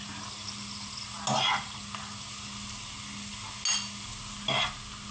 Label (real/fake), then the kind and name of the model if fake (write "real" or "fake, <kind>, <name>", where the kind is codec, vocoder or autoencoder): real